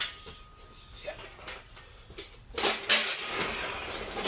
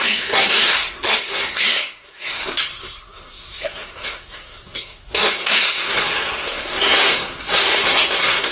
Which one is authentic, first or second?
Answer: first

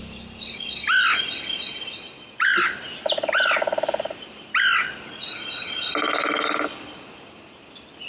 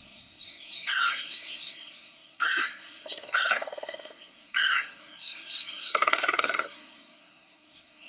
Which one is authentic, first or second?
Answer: first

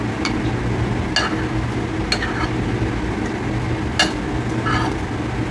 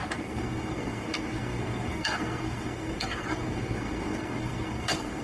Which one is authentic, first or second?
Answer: first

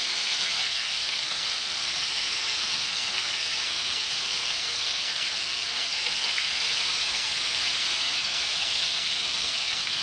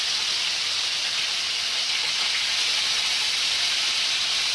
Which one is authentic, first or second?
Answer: second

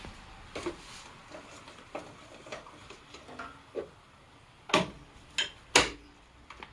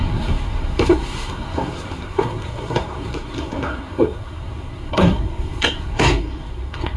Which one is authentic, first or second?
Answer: first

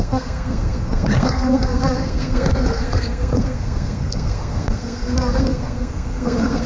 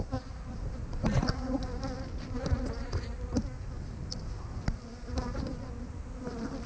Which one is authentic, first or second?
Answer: second